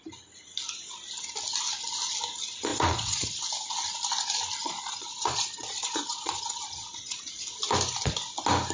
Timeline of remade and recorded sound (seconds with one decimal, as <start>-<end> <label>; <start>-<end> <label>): 0.0-2.7 recorded; 2.7-3.4 remade; 3.4-4.6 recorded; 4.6-7.4 remade; 7.4-8.7 recorded

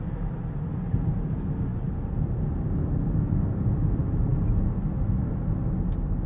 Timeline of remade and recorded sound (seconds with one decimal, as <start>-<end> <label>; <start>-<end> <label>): 0.0-6.3 recorded

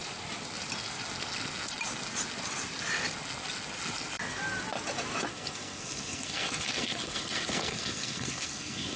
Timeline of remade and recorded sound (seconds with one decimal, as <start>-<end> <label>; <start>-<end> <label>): 0.0-5.3 recorded; 5.3-9.0 remade

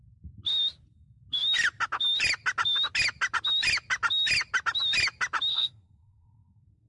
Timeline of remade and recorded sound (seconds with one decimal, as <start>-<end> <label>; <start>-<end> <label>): 0.0-5.5 recorded; 5.5-6.9 remade